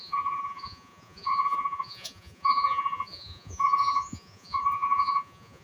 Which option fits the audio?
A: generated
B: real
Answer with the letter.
A